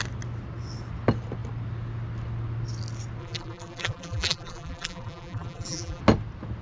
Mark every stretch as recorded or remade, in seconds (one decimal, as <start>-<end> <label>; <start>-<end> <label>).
0.0-3.2 recorded; 3.2-6.0 remade; 6.0-6.6 recorded